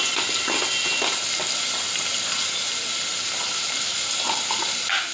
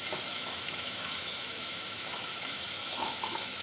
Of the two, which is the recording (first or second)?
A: first